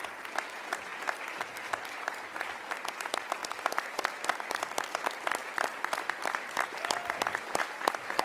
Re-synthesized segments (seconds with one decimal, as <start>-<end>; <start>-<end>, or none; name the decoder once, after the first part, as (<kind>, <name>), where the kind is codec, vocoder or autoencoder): none